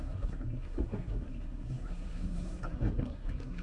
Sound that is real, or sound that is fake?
fake